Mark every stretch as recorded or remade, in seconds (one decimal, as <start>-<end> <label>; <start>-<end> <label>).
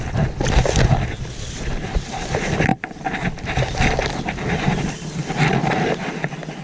0.0-6.6 recorded